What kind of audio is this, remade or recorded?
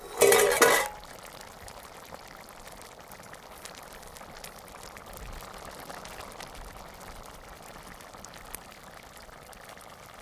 recorded